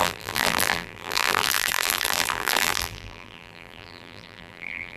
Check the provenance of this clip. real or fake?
fake